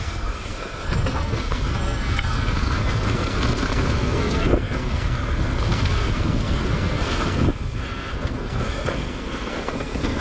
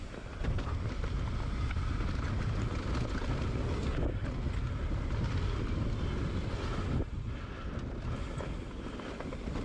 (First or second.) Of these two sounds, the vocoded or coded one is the first